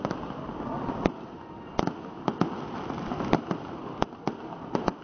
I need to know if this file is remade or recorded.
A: recorded